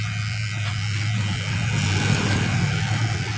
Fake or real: real